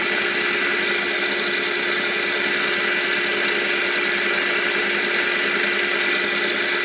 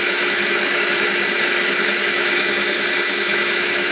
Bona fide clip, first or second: first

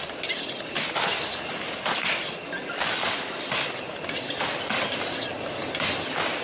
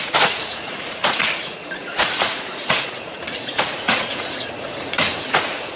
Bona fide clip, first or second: first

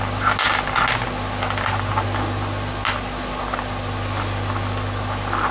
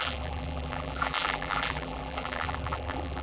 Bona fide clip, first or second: first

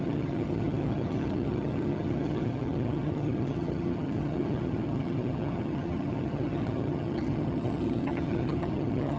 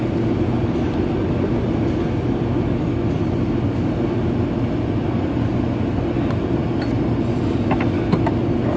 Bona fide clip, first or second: second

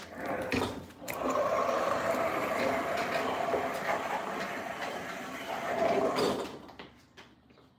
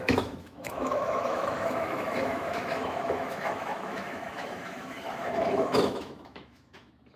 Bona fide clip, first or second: first